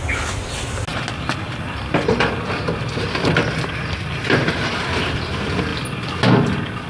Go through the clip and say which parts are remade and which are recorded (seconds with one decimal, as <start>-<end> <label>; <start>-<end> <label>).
0.0-6.9 recorded